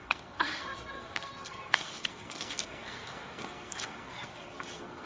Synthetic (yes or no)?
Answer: yes